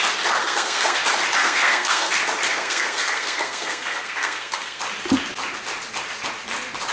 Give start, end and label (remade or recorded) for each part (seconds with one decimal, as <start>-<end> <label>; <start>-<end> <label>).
0.0-0.4 recorded; 0.4-1.0 remade; 1.0-1.4 recorded; 1.4-2.1 remade; 2.1-2.5 recorded; 2.5-4.8 remade; 4.8-6.9 recorded